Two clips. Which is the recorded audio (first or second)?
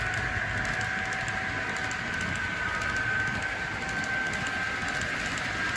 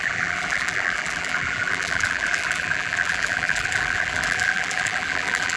first